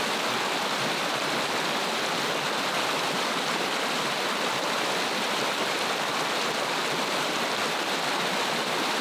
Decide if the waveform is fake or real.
real